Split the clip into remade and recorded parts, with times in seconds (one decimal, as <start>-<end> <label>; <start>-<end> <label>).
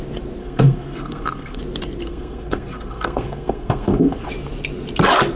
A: 0.0-0.4 recorded; 0.4-1.6 remade; 1.6-2.0 recorded; 2.0-4.3 remade; 4.3-5.4 recorded